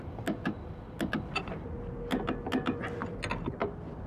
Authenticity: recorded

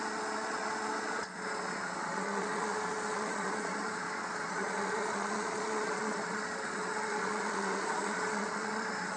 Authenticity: remade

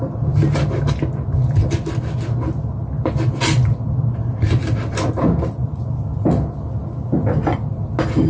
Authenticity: recorded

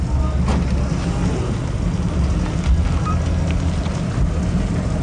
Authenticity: recorded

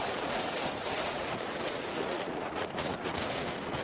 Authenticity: remade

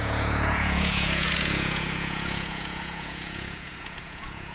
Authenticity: remade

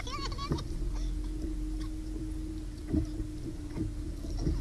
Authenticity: recorded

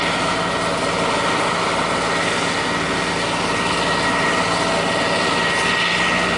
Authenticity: recorded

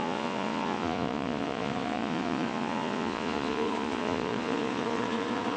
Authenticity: remade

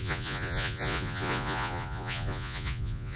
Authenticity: remade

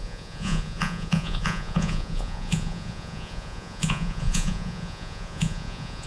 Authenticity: remade